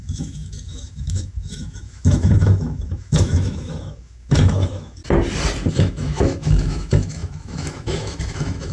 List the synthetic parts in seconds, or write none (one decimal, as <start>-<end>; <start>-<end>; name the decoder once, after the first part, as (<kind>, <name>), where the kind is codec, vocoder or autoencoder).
0.0-5.0 (autoencoder, DAC-VAE); 5.7-8.7